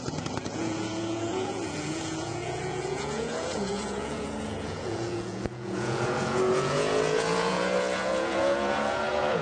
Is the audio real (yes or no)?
no